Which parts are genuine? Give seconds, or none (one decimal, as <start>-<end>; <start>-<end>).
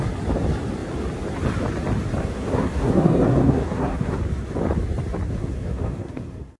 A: 0.0-2.2; 4.2-5.3